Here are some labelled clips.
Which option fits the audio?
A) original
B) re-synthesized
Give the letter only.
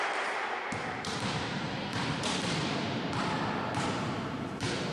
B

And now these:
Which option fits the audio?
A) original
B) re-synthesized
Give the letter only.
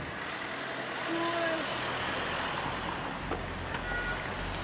A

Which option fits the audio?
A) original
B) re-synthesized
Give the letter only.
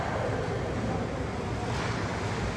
A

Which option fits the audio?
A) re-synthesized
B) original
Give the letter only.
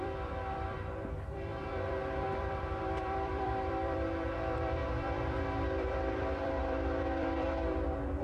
A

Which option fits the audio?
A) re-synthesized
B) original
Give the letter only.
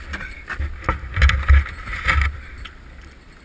B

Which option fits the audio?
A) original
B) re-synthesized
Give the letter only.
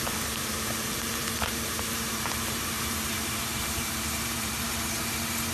B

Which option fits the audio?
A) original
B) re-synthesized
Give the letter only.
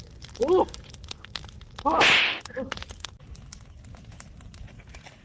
A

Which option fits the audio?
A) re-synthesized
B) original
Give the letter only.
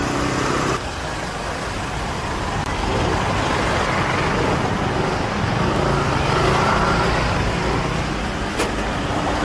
B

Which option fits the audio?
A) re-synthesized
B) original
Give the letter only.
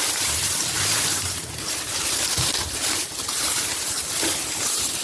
A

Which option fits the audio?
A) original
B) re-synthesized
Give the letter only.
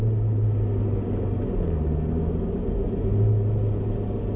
A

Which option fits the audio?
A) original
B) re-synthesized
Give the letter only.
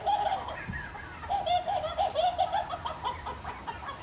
A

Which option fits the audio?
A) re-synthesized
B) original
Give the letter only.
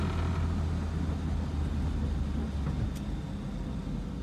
B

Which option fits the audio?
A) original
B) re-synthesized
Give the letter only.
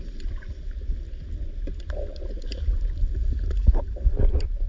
A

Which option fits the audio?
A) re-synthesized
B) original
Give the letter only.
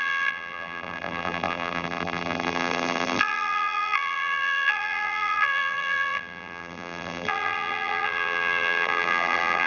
A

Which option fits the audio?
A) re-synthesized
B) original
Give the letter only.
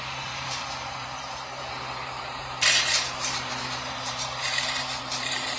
A